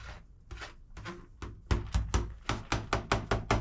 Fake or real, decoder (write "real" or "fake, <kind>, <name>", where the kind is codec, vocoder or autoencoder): real